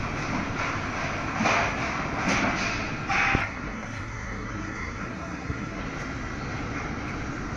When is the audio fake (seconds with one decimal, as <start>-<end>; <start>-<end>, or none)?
3.4-5.8